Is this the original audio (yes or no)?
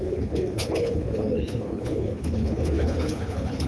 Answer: no